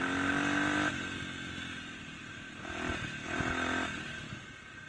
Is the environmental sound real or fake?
real